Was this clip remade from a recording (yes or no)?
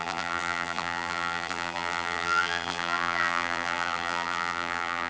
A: yes